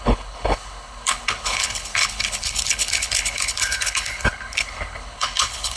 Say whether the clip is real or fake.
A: fake